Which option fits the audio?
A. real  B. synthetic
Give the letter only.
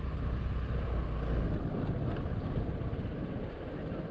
A